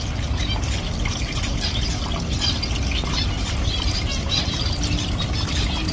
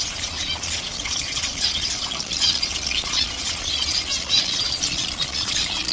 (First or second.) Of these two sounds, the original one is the first